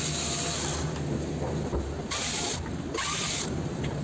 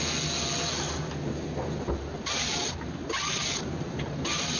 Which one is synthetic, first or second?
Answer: first